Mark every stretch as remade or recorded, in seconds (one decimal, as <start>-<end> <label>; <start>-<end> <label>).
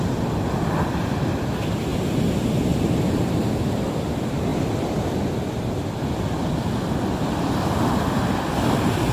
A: 0.0-9.1 recorded